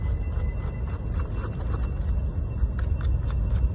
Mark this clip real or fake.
real